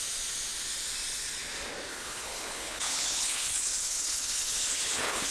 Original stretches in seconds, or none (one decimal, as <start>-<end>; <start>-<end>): 0.0-1.9